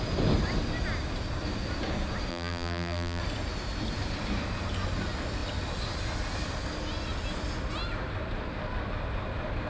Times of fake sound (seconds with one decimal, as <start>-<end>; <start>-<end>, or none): 2.3-3.2